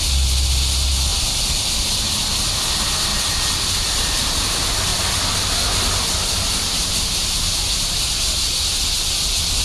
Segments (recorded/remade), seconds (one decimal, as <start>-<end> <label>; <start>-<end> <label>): 0.0-1.1 recorded; 1.1-2.0 remade; 2.0-3.1 recorded; 3.1-4.5 remade; 4.5-9.6 recorded